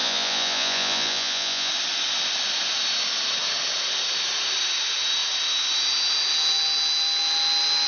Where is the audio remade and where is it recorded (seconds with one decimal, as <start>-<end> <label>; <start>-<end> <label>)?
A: 0.0-1.7 remade; 1.7-7.9 recorded